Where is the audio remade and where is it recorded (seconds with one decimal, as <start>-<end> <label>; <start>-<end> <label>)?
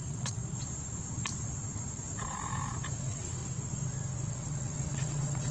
0.0-0.4 remade; 0.4-3.0 recorded; 3.0-3.4 remade; 3.4-4.3 recorded; 4.3-5.5 remade